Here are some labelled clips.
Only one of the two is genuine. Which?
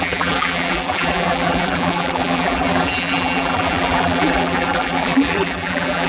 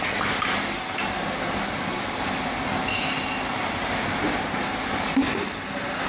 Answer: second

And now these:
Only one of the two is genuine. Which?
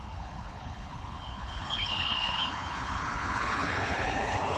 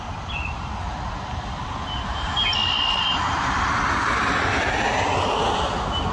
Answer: second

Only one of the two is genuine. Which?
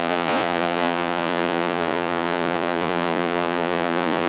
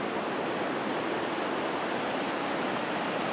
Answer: second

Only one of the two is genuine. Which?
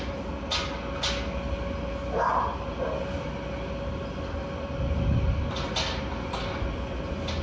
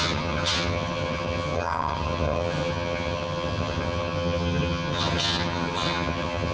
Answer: first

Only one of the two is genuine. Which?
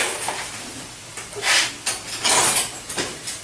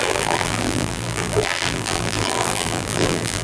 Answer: first